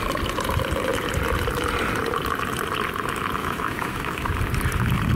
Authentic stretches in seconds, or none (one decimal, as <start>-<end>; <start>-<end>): 0.0-3.4; 4.3-5.2